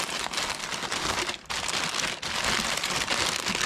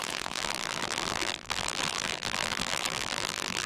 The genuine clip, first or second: first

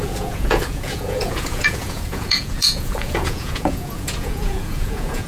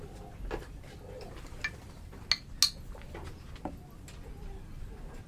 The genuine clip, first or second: second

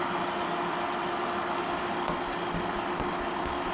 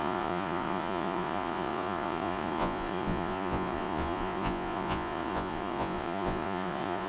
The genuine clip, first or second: first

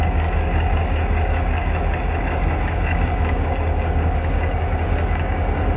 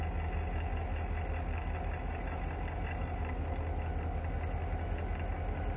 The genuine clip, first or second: second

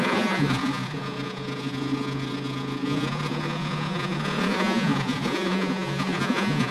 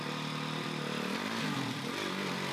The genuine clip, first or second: second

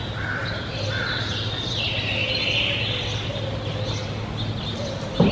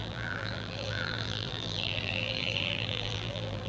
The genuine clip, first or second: first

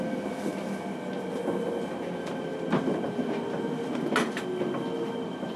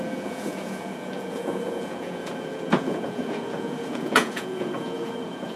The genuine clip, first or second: first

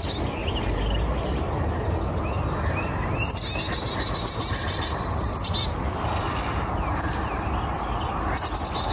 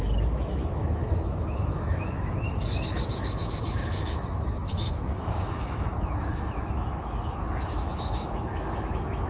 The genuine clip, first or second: first